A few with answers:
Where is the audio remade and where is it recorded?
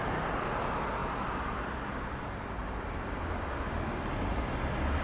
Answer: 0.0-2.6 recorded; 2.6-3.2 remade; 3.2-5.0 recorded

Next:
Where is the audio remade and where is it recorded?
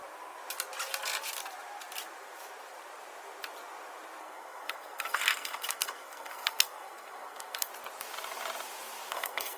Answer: 0.0-4.2 recorded; 4.2-7.7 remade; 7.7-9.1 recorded; 9.1-9.6 remade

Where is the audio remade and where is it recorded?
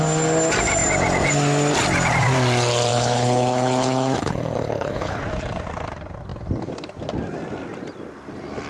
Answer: 0.0-2.9 recorded; 2.9-5.2 remade; 5.2-8.7 recorded